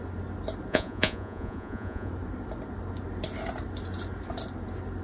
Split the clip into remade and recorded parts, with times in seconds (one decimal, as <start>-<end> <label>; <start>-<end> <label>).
0.0-0.7 recorded; 0.7-2.1 remade; 2.1-5.0 recorded